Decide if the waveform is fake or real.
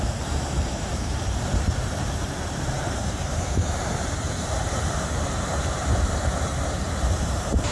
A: fake